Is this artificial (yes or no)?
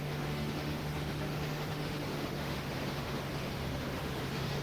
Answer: yes